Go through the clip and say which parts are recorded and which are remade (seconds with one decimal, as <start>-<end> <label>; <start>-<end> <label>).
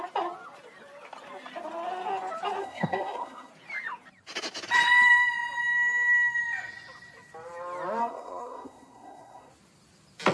0.0-2.6 recorded; 2.6-3.5 remade; 3.5-8.0 recorded; 8.0-9.5 remade; 9.5-10.3 recorded